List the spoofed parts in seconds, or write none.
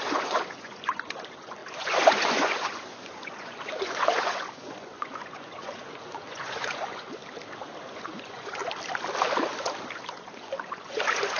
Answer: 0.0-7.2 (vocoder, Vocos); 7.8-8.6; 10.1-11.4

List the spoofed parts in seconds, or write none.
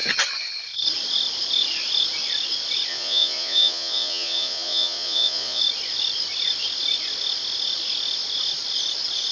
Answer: 2.9-5.6 (vocoder, Vocos)